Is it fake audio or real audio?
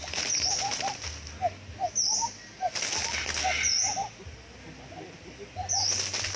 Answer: real